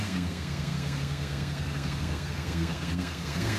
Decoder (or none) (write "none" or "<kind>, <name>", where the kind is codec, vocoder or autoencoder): codec, SNAC